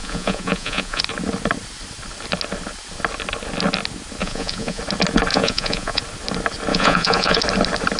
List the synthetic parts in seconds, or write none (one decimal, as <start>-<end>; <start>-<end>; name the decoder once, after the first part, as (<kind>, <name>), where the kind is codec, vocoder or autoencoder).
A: 0.0-1.0 (vocoder, Vocos); 4.2-4.8; 5.3-6.0; 6.7-7.4